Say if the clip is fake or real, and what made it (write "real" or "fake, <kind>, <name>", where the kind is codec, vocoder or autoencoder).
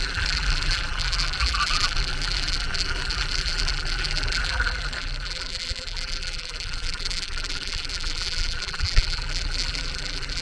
fake, vocoder, BigVGAN v2